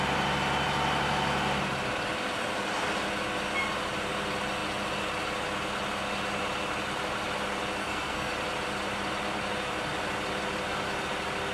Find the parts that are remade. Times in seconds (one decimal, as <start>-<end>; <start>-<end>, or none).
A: 7.8-8.3